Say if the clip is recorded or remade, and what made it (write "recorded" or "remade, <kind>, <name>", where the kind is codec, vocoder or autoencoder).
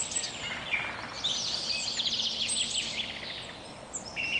recorded